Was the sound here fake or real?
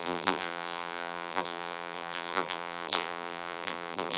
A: fake